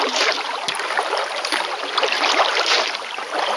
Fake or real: fake